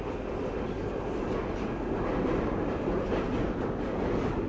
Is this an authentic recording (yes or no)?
yes